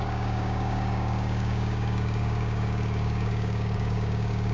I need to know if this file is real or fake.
fake